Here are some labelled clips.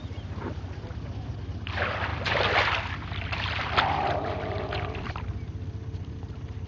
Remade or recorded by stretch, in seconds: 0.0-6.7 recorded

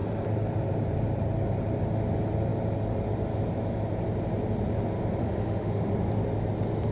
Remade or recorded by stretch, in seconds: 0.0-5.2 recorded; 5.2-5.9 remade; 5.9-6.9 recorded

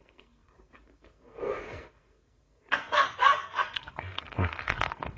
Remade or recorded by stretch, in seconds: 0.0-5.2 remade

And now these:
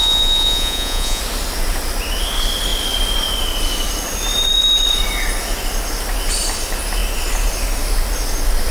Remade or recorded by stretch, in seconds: 0.0-1.2 remade; 1.2-8.7 recorded

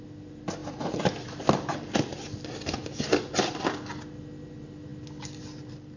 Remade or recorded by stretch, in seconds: 0.0-6.0 recorded

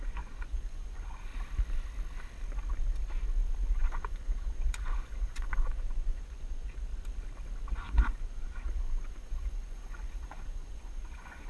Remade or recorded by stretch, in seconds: 0.0-1.3 remade; 1.3-3.7 recorded; 3.7-6.9 remade; 6.9-7.7 recorded; 7.7-11.5 remade

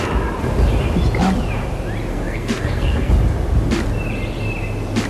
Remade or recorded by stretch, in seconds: 0.0-2.1 recorded; 2.1-3.1 remade; 3.1-5.1 recorded

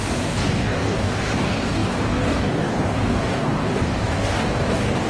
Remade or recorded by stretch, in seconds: 0.0-5.1 remade